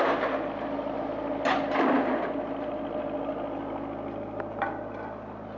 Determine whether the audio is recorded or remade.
recorded